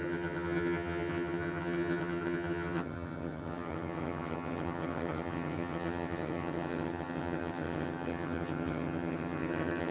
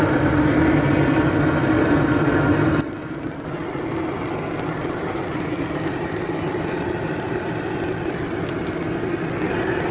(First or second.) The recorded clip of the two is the second